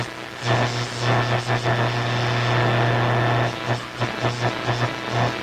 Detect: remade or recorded recorded